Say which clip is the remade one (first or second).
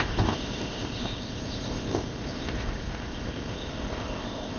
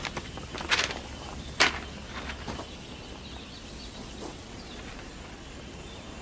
first